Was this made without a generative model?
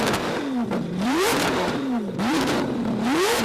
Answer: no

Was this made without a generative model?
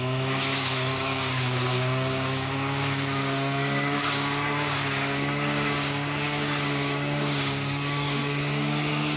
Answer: no